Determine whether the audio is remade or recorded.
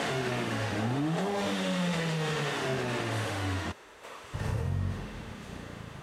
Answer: remade